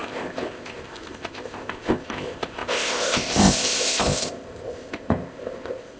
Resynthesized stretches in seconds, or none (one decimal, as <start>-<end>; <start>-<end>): 0.0-6.0